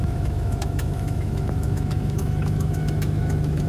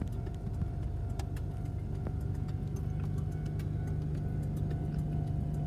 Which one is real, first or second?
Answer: second